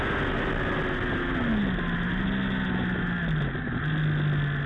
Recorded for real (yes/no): yes